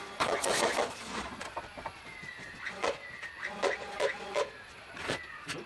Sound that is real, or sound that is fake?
fake